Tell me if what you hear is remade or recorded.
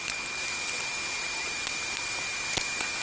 recorded